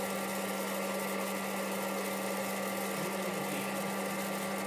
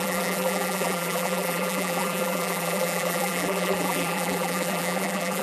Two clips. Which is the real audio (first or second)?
first